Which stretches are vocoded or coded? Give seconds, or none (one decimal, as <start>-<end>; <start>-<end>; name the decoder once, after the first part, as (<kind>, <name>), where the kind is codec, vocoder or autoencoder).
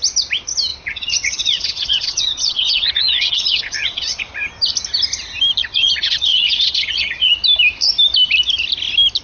0.7-4.2 (vocoder, Vocos); 5.6-7.3